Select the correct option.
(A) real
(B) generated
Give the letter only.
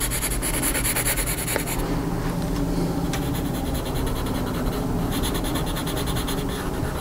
A